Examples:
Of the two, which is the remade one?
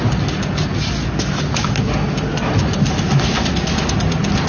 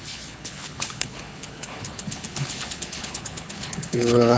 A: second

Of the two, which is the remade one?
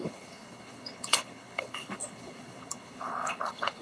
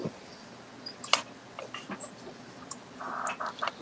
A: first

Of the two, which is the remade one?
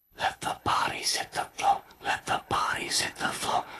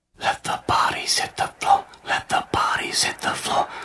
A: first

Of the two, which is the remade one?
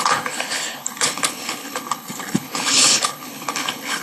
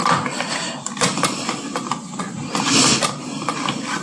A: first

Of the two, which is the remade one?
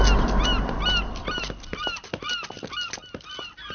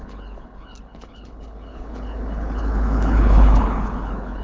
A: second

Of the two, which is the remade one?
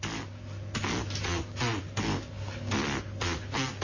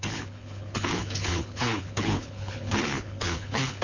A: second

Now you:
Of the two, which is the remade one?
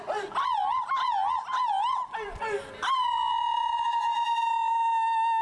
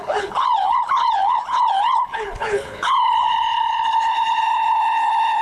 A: second